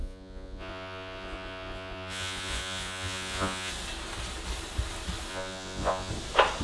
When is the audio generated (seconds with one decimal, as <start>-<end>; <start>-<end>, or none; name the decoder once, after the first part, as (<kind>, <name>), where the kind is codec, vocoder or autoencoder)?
0.0-3.7 (vocoder, Vocos); 5.3-6.1